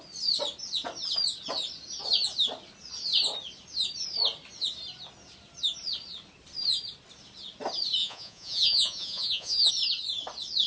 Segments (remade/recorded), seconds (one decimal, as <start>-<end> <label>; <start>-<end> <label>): 0.0-8.0 recorded; 8.0-9.7 remade; 9.7-10.7 recorded